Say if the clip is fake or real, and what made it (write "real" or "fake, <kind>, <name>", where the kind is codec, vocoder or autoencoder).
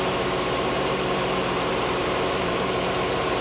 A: fake, vocoder, BigVGAN v2